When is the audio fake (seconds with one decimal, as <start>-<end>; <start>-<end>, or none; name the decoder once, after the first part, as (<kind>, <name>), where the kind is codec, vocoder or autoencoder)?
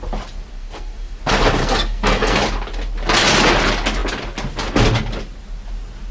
0.5-1.2 (codec, SNAC); 1.6-2.4